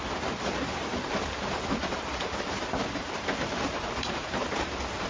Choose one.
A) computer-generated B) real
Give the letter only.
A